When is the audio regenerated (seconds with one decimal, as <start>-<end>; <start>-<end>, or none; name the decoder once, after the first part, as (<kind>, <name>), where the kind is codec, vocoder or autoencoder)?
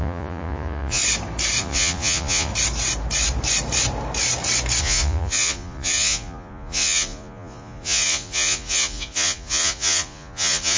0.0-1.0 (vocoder, Vocos); 1.6-2.5; 4.8-10.8